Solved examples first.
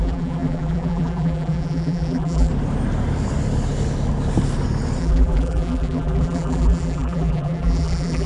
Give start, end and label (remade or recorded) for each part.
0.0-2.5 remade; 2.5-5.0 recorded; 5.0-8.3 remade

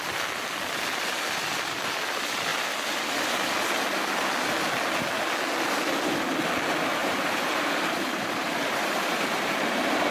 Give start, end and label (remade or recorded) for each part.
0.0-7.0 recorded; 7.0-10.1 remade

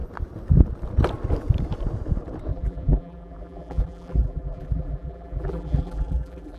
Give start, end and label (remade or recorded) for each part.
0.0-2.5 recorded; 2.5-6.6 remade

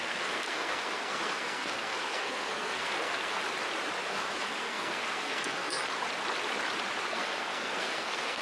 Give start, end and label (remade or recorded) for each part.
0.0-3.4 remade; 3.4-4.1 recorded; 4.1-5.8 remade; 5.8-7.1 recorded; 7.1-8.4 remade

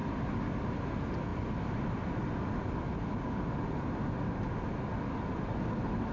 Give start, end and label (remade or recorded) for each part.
0.0-6.1 recorded

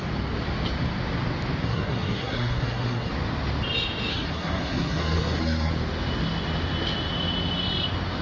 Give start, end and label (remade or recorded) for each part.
0.0-1.6 recorded; 1.6-3.1 remade; 3.1-4.1 recorded; 4.1-5.7 remade; 5.7-8.2 recorded

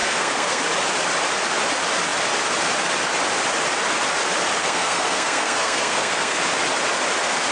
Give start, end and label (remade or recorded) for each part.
0.0-0.6 remade; 0.6-4.6 recorded; 4.6-6.4 remade; 6.4-7.5 recorded